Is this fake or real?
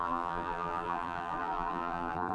fake